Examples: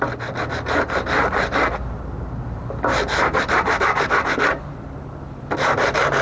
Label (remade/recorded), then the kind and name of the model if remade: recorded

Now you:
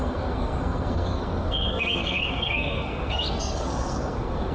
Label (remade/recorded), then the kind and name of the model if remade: remade, codec, SNAC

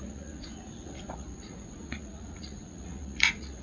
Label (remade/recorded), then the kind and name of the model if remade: remade, vocoder, Vocos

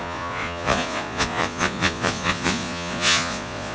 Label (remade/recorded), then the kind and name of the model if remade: remade, vocoder, Vocos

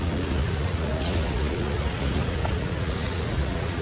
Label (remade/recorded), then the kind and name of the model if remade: remade, vocoder, Vocos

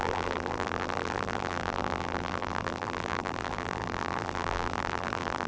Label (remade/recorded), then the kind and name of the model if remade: remade, vocoder, BigVGAN v2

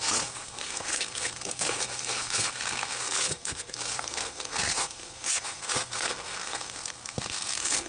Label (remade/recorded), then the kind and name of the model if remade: remade, codec, SNAC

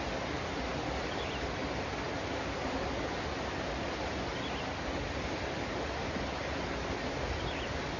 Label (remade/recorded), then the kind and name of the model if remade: recorded